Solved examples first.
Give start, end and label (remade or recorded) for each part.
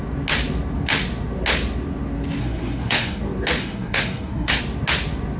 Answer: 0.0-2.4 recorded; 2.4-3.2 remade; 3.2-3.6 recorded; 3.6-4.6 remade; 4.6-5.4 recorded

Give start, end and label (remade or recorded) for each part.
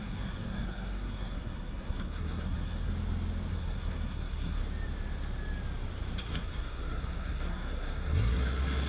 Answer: 0.0-2.9 remade; 2.9-3.5 recorded; 3.5-4.6 remade; 4.6-6.2 recorded; 6.2-8.9 remade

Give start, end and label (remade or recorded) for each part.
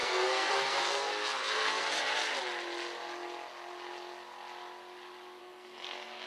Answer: 0.0-2.2 remade; 2.2-5.4 recorded; 5.4-6.3 remade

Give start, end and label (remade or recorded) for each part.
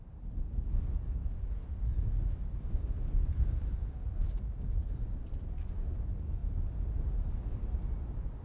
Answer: 0.0-8.4 recorded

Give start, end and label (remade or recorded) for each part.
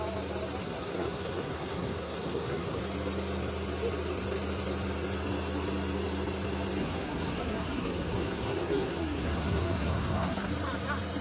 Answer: 0.0-0.6 recorded; 0.6-2.8 remade; 2.8-6.8 recorded; 6.8-10.5 remade; 10.5-11.2 recorded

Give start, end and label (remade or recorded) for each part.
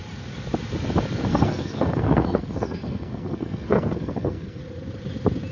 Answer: 0.0-1.3 recorded; 1.3-4.6 remade; 4.6-5.5 recorded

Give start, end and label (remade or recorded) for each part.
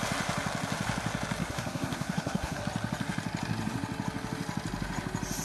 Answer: 0.0-1.4 recorded; 1.4-2.6 remade; 2.6-5.4 recorded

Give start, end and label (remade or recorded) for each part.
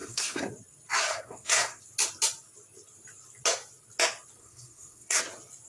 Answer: 0.0-0.5 remade; 0.5-1.1 recorded; 1.1-1.8 remade; 1.8-4.4 recorded; 4.4-5.2 remade; 5.2-5.7 recorded